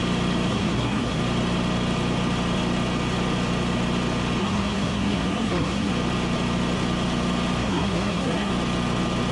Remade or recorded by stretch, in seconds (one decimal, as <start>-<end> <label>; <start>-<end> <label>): 0.0-0.5 recorded; 0.5-1.2 remade; 1.2-4.4 recorded; 4.4-5.9 remade; 5.9-7.6 recorded; 7.6-8.5 remade; 8.5-9.3 recorded